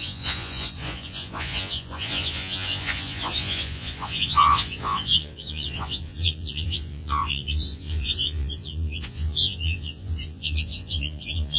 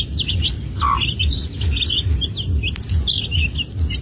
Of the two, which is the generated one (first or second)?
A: first